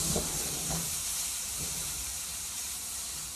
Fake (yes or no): yes